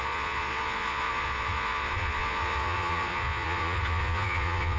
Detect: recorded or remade remade